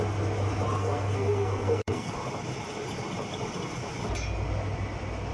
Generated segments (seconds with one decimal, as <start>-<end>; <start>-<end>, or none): 0.8-2.1